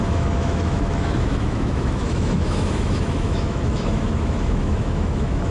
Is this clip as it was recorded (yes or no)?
no